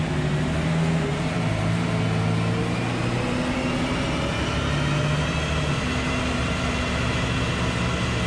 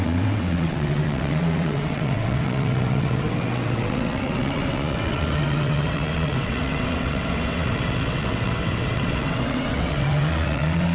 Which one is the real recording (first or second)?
first